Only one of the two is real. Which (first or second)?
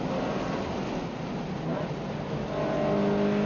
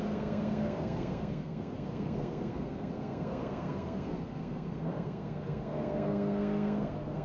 first